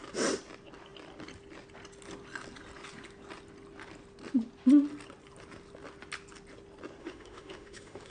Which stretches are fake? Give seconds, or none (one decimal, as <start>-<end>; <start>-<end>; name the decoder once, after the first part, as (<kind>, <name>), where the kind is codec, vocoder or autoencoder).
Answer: 7.0-8.1 (autoencoder, DAC-VAE)